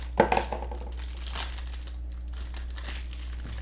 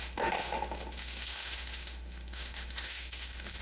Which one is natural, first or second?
first